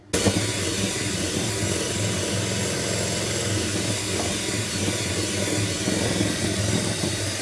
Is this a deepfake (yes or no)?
no